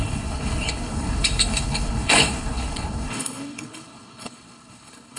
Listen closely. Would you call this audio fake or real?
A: fake